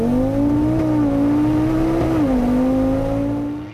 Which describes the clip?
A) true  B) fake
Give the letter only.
A